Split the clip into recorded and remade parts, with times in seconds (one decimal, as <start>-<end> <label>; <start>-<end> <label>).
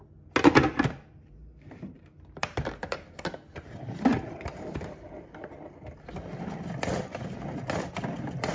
0.0-1.4 recorded; 1.4-3.2 remade; 3.2-4.1 recorded; 4.1-5.5 remade; 5.5-8.5 recorded